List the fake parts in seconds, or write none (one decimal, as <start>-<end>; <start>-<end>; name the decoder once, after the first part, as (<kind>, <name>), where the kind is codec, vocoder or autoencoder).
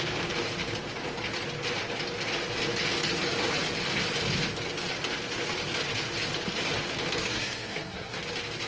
7.2-8.2 (codec, SNAC)